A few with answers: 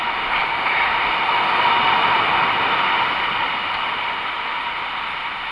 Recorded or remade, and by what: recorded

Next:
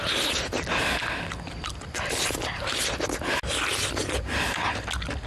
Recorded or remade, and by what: recorded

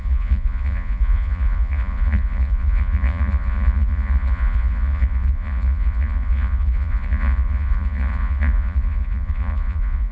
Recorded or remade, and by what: remade, vocoder, Vocos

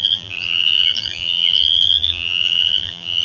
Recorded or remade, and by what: remade, vocoder, BigVGAN v2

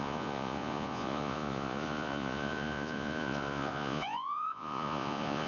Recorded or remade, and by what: remade, vocoder, Vocos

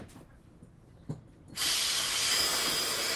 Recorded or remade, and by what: recorded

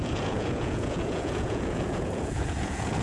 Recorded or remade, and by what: remade, vocoder, Vocos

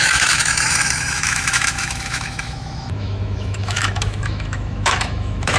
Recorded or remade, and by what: remade, autoencoder, DAC-VAE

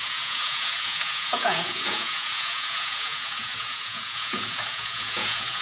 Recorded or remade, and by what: remade, vocoder, Vocos